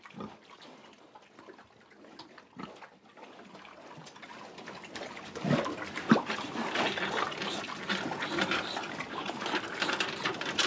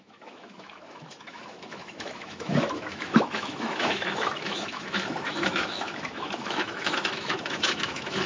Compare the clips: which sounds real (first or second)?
first